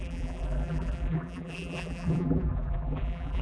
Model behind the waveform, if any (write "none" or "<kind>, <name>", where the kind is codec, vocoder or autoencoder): vocoder, BigVGAN v2